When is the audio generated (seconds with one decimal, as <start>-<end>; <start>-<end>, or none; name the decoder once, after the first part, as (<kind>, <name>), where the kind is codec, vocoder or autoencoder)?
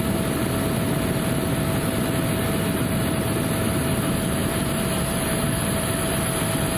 4.4-6.2 (vocoder, BigVGAN v2)